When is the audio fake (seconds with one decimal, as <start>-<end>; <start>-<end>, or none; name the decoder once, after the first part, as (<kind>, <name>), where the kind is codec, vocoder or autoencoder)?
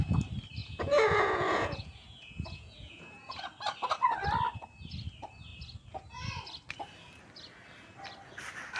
0.6-3.4 (vocoder, Vocos)